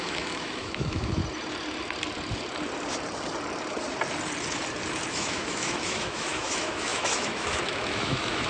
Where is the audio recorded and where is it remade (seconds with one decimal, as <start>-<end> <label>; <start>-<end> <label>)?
0.0-1.2 remade; 1.2-5.1 recorded; 5.1-8.5 remade